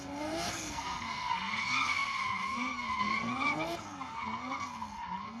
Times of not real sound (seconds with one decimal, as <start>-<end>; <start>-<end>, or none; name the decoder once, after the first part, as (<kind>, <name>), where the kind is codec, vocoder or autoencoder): 0.0-5.4 (codec, SNAC)